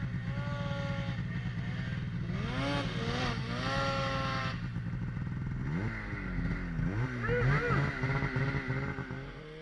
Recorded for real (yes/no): yes